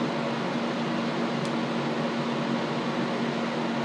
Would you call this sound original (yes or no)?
yes